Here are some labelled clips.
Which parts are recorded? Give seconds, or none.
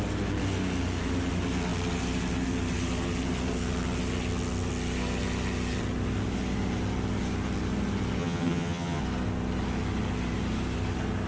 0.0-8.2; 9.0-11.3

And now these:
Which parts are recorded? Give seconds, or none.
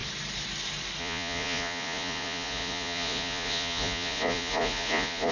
0.0-1.0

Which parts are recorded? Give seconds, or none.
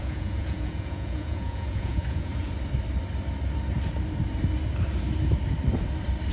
2.3-6.3